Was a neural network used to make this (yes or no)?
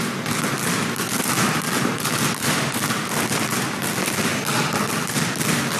no